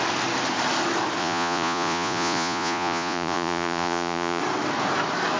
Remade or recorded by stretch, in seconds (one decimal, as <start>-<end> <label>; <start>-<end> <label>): 0.0-1.2 recorded; 1.2-4.4 remade; 4.4-5.4 recorded